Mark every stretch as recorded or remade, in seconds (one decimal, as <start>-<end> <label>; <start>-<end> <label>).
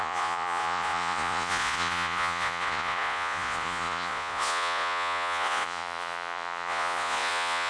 0.0-7.7 remade